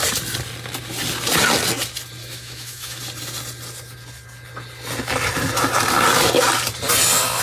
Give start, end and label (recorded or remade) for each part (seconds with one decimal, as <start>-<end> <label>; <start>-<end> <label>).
0.0-2.2 recorded; 2.2-3.0 remade; 3.0-7.4 recorded